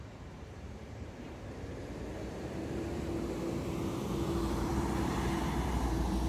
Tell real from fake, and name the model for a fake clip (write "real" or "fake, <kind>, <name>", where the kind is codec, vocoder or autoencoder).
fake, vocoder, BigVGAN v2